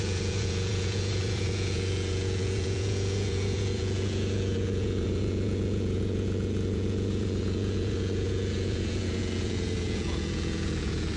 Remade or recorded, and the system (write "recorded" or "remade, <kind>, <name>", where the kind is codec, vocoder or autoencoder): remade, vocoder, Vocos